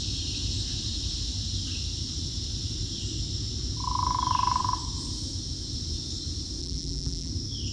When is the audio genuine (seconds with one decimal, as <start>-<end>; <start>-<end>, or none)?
0.0-6.6; 7.3-7.7